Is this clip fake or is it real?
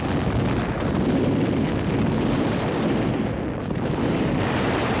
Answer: real